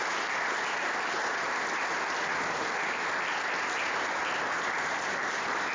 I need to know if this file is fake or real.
real